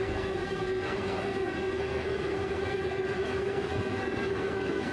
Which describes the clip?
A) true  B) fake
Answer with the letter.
B